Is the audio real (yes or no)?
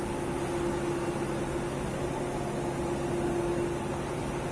yes